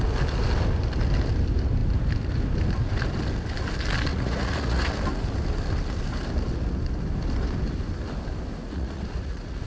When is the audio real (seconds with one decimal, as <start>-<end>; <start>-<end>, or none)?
0.0-4.1; 4.9-8.6